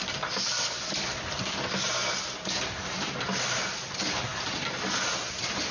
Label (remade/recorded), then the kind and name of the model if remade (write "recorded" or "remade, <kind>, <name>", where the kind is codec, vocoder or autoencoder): recorded